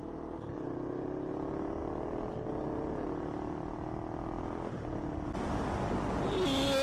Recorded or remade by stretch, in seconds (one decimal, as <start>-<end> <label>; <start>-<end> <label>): 0.0-6.8 recorded